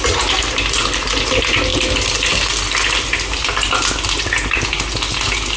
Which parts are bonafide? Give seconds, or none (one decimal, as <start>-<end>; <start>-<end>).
0.0-5.6